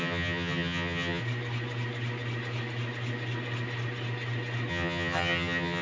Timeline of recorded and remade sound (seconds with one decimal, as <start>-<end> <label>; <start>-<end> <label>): 0.0-1.2 remade; 1.2-4.7 recorded; 4.7-5.8 remade